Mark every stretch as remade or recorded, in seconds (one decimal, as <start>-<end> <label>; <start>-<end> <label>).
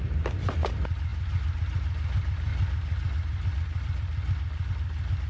0.0-5.3 recorded